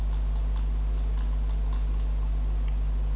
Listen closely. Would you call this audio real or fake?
real